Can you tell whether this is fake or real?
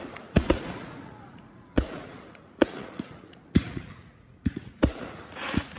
fake